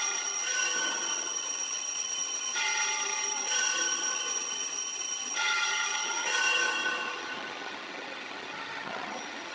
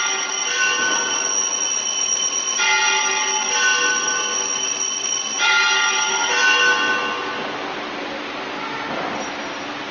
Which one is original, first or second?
second